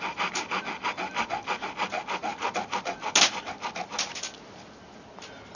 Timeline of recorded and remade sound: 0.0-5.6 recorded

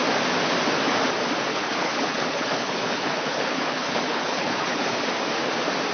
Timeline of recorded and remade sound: 0.0-1.5 recorded; 1.5-5.0 remade; 5.0-5.9 recorded